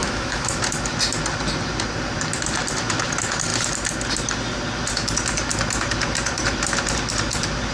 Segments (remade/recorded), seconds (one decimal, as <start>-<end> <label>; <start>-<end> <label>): 0.0-0.6 remade; 0.6-7.7 recorded